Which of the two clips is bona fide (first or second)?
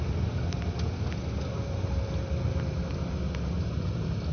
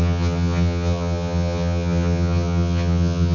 first